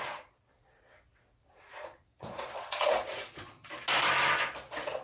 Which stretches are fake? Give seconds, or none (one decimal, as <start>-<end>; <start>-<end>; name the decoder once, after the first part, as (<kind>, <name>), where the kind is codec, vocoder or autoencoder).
1.5-3.7 (vocoder, Vocos)